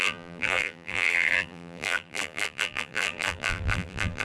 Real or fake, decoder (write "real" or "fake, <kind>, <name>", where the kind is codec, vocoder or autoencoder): fake, vocoder, BigVGAN v2